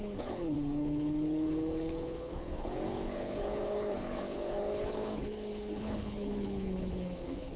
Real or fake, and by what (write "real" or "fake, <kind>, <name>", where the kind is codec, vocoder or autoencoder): fake, codec, HILCodec